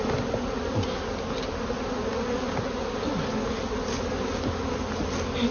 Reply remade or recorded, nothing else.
recorded